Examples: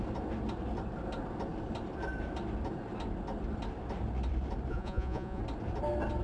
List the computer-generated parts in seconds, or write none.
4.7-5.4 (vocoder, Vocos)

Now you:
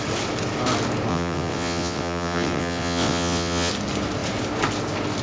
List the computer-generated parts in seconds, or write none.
1.1-3.7 (vocoder, WaveNeXt)

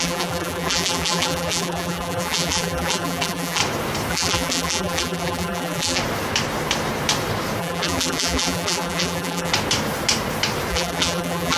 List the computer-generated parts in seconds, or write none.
0.0-3.6 (vocoder, BigVGAN v2); 4.1-6.0; 7.6-9.5; 10.7-11.6

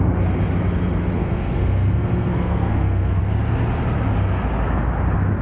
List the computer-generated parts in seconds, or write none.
1.2-3.2 (codec, SNAC)

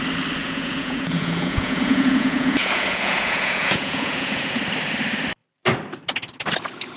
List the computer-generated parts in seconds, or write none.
0.4-4.6 (vocoder, Vocos)

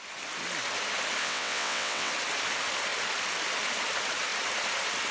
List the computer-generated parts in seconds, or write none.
1.2-2.1 (vocoder, WaveNeXt)